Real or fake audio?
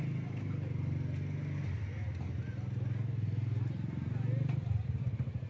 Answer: real